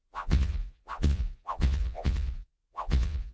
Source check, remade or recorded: remade